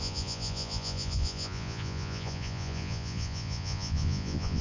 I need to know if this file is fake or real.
fake